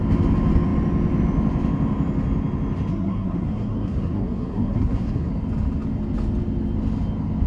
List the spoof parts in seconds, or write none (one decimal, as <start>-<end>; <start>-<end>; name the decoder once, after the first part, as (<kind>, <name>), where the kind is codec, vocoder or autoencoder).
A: 2.9-5.3 (codec, SNAC)